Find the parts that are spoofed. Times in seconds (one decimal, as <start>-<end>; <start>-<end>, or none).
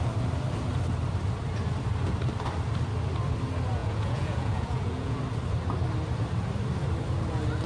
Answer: 3.8-5.2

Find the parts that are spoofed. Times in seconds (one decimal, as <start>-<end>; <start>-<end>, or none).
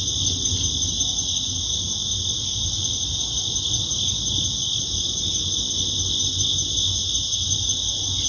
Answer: none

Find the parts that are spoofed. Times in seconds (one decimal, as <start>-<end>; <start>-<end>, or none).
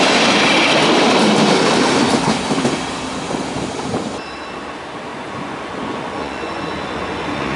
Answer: 5.1-7.6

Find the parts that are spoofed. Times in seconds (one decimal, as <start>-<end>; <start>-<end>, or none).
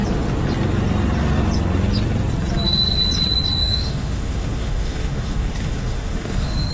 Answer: 3.6-6.7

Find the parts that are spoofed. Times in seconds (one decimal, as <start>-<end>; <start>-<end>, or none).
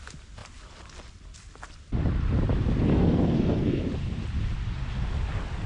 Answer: 2.9-3.8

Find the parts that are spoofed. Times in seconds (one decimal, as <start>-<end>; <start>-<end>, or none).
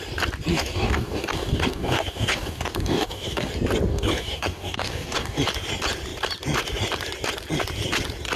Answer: 0.5-3.5; 3.9-5.4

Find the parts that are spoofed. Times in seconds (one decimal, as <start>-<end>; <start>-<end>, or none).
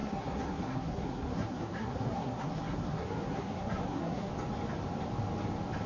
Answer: 0.0-4.3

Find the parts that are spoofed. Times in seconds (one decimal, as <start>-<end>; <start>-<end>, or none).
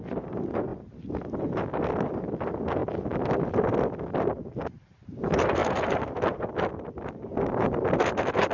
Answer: 0.0-5.6; 8.0-8.5